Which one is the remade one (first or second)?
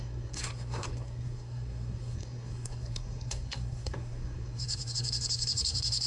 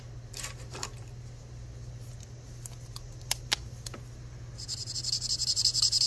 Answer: first